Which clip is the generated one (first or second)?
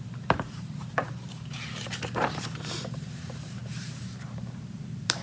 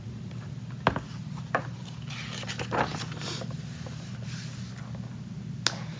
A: first